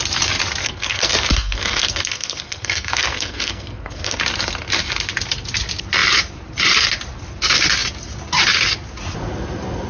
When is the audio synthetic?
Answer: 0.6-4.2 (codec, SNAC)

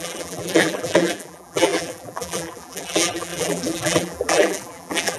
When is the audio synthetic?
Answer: 0.0-5.2 (vocoder, BigVGAN v2)

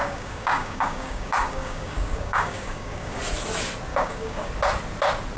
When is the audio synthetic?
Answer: 0.0-3.2 (codec, DAC); 3.9-4.5

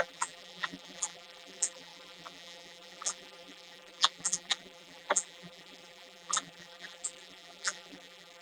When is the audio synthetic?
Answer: 0.0-8.4 (vocoder, BigVGAN v2)

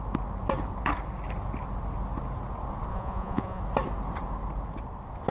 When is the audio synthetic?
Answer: 2.9-3.6 (vocoder, Vocos)

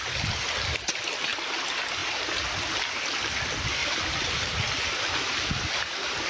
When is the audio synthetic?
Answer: none

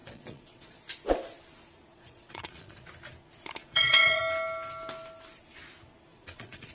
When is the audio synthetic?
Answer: 0.0-0.8 (vocoder, Vocos); 1.9-2.8; 3.6-4.2; 6.1-6.7